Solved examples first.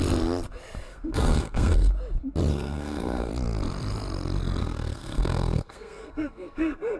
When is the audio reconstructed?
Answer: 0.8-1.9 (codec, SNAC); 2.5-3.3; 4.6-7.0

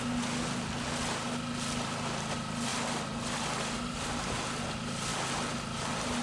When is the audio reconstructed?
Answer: none

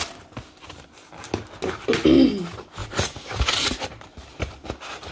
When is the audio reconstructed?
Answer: none

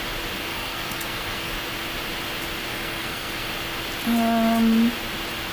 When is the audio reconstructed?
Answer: 0.5-1.5 (codec, SNAC); 2.7-3.5